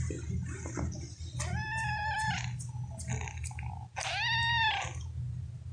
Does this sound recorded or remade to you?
recorded